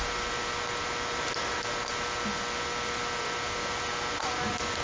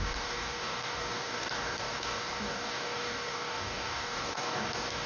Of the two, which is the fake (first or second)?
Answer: second